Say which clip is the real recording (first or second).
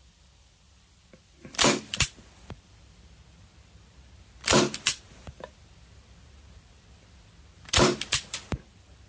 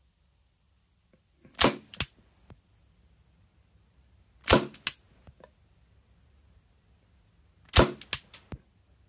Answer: second